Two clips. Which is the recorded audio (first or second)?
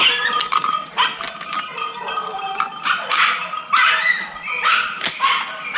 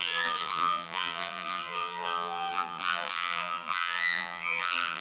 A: first